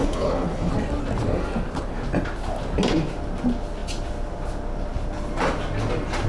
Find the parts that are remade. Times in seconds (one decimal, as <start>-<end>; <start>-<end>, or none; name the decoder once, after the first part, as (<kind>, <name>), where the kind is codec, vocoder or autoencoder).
0.0-0.7 (codec, HILCodec)